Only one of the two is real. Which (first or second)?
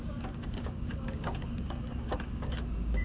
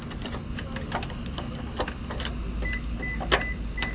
second